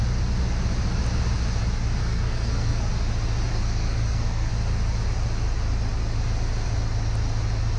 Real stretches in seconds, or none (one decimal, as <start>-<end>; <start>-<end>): 0.0-2.0; 2.9-3.5; 4.5-7.8